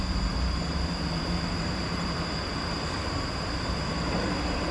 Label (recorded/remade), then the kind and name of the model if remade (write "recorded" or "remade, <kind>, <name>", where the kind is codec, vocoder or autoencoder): remade, vocoder, BigVGAN v2